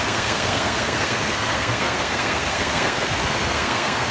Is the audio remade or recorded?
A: remade